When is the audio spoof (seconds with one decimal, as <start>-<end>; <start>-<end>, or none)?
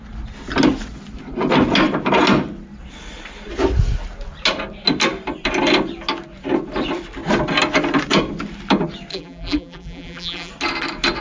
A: 9.1-10.5